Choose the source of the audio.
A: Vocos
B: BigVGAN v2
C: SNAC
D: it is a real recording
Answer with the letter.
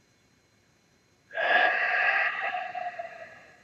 B